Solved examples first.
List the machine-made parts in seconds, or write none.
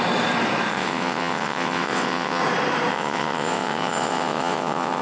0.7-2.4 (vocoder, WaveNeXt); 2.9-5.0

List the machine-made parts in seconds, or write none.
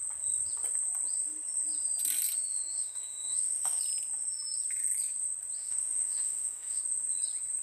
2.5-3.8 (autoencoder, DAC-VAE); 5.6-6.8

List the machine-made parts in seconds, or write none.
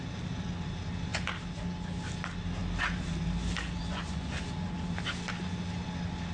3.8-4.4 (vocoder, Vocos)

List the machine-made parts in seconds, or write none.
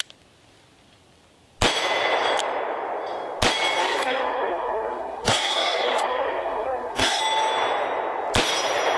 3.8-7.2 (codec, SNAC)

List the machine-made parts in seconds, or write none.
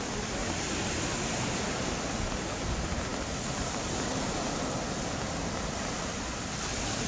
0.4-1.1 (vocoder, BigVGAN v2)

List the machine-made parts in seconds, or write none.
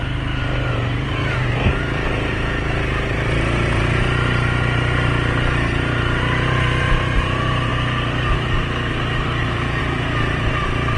0.0-7.7 (vocoder, BigVGAN v2); 9.8-11.0